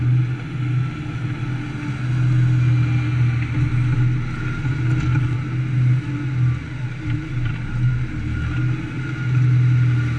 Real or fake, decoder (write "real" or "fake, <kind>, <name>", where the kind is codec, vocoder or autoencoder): real